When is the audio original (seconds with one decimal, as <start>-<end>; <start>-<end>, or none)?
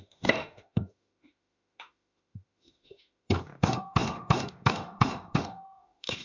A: none